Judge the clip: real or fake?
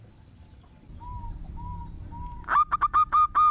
real